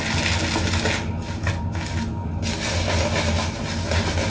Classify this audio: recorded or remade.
recorded